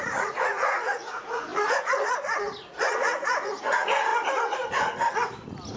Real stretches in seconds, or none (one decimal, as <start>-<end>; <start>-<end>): 4.1-5.8